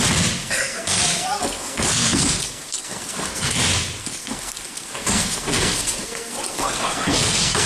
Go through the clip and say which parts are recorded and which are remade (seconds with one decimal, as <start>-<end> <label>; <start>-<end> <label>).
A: 0.0-0.4 recorded; 0.4-3.6 remade; 3.6-4.0 recorded; 4.0-7.7 remade